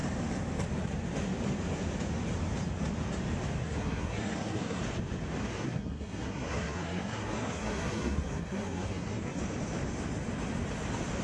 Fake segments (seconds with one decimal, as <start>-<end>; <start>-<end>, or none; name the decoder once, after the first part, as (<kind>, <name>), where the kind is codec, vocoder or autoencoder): 3.6-4.8 (codec, SNAC); 5.4-9.4